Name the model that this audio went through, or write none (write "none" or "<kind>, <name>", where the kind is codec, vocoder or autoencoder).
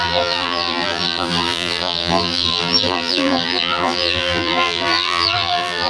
vocoder, BigVGAN v2